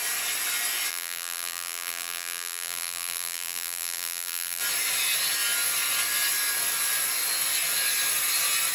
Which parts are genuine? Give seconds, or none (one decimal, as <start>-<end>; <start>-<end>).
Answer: 0.0-0.9; 4.6-8.7